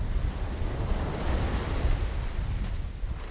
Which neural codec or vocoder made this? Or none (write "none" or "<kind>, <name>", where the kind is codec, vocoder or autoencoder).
none